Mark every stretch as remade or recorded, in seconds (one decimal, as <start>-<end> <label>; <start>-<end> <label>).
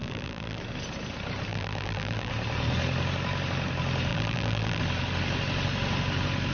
0.0-0.6 remade; 0.6-1.5 recorded; 1.5-2.3 remade; 2.3-4.1 recorded; 4.1-4.8 remade; 4.8-6.5 recorded